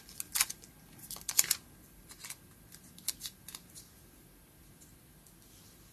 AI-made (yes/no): no